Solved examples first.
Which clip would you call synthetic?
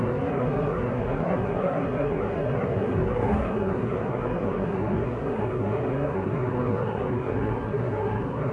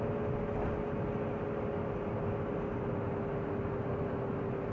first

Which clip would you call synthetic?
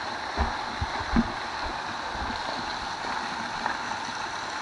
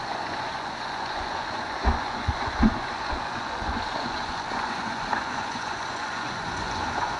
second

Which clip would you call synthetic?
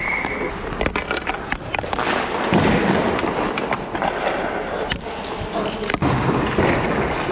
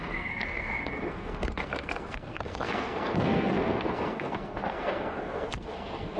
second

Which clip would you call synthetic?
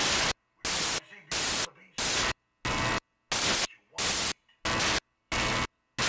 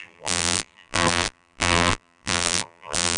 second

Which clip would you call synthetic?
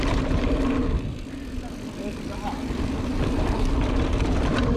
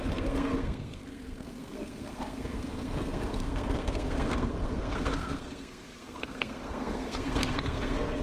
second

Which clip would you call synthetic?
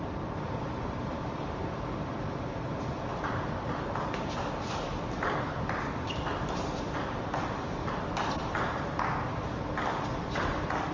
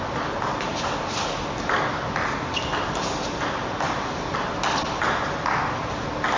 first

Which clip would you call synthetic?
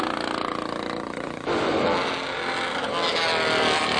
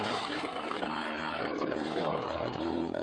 second